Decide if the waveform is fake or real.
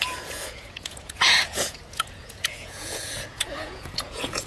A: fake